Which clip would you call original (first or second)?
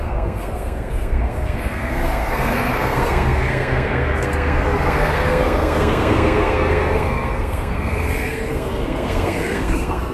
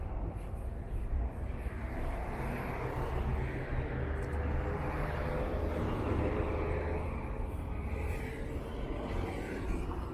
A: second